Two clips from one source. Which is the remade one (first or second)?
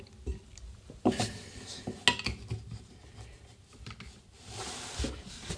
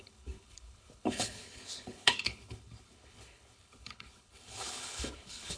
second